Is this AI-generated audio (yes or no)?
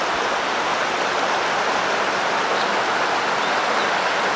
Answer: no